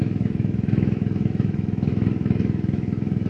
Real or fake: fake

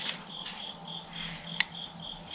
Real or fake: real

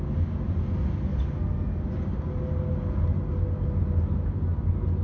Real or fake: real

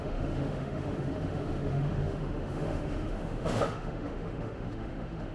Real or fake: fake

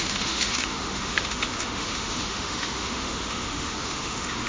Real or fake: fake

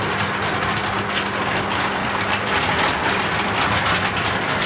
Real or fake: real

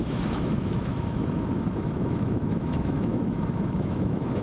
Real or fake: fake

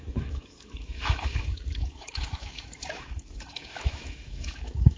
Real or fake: fake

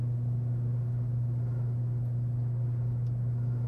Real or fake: real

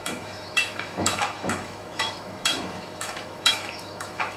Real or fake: fake